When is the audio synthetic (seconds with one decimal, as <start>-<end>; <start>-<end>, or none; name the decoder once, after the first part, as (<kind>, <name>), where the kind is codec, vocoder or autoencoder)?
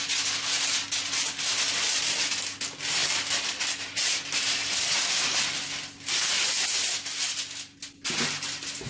3.0-3.6 (vocoder, BigVGAN v2)